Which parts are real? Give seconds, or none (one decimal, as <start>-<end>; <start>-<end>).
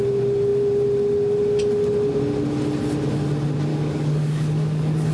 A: 0.0-3.7